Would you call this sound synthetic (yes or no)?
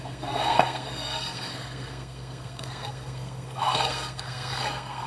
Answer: yes